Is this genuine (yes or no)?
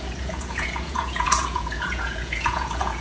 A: no